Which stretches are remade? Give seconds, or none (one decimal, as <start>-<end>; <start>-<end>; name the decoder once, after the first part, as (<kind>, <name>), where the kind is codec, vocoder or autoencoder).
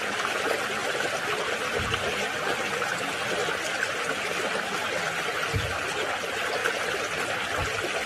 0.8-1.5 (vocoder, BigVGAN v2); 3.4-4.0; 6.6-7.2